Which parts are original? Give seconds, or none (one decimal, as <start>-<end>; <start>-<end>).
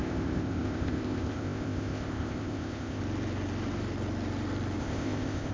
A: 3.0-4.8